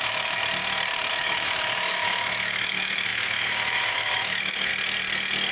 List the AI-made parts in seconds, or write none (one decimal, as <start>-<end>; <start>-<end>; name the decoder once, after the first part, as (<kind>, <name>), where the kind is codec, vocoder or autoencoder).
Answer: 0.0-0.4 (autoencoder, DAC-VAE); 1.1-4.7